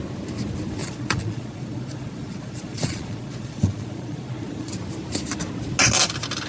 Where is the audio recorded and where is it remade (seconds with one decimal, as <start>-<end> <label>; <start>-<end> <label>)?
0.0-0.8 recorded; 0.8-4.7 remade; 4.7-6.5 recorded